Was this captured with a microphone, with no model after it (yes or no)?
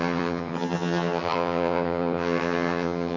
no